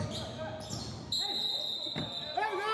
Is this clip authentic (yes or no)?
yes